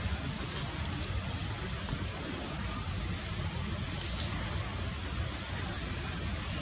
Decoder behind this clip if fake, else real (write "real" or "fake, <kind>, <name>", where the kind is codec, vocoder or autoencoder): real